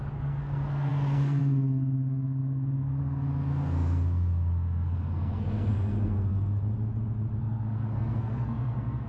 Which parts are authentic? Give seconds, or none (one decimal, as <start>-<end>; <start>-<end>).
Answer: 6.6-7.4